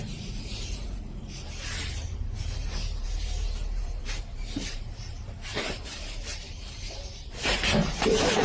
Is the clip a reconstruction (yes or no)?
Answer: yes